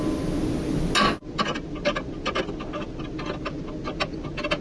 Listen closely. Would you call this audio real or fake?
real